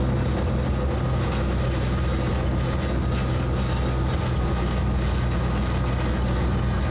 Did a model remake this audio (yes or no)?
no